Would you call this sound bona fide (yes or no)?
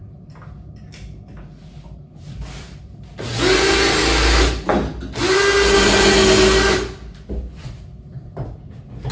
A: yes